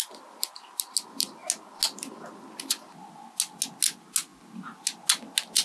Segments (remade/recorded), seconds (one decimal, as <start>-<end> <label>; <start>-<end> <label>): 0.0-5.6 recorded